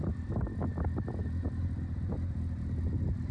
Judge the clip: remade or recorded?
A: recorded